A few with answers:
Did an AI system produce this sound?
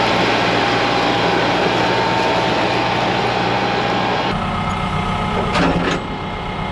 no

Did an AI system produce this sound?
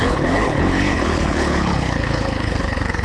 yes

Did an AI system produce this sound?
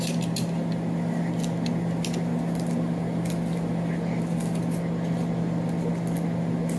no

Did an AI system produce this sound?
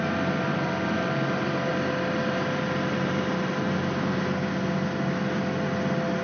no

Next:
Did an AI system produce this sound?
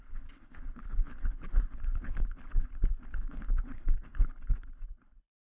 yes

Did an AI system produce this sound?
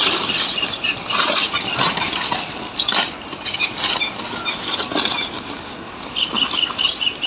no